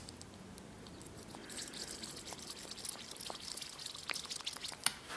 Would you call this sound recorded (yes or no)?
yes